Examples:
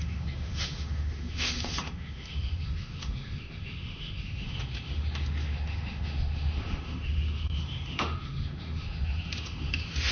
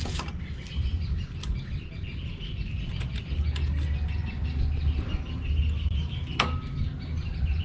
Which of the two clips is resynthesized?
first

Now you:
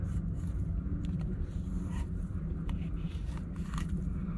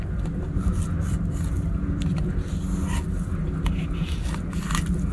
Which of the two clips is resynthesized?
first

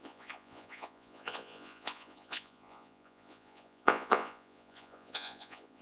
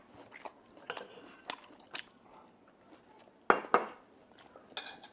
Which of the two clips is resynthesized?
first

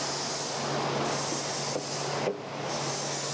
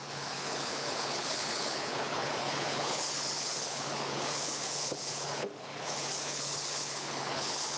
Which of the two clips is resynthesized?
second